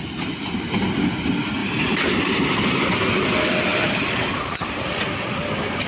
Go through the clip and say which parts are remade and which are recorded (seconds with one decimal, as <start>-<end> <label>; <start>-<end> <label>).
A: 0.0-1.6 recorded; 1.6-2.9 remade; 2.9-5.9 recorded